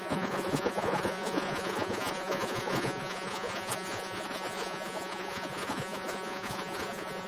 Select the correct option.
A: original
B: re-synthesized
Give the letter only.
B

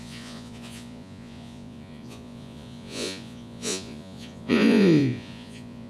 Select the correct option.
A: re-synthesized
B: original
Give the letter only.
A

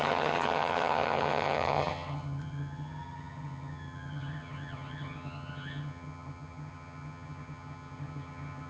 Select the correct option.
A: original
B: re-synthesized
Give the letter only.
B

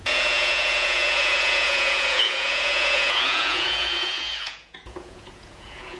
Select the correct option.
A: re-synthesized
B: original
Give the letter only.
A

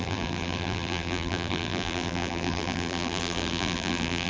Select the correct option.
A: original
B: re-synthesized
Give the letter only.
B